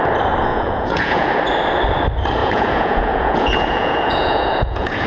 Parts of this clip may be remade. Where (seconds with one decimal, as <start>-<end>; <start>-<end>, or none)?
0.5-1.3; 2.4-5.1